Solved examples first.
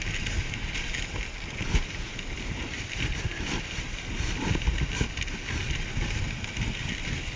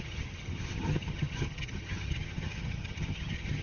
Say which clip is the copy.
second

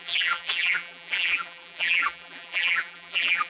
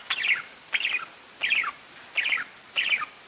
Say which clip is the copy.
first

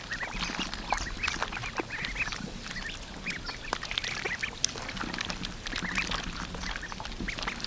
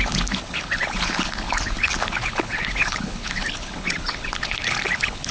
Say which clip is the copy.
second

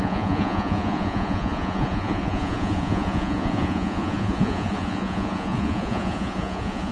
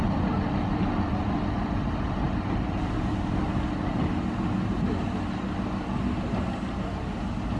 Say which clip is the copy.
first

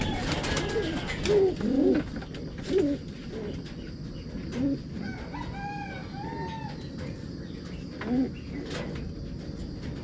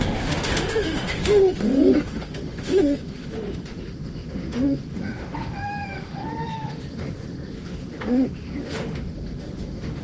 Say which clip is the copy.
second